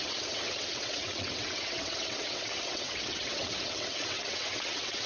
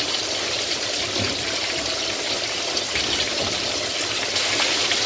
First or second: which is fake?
first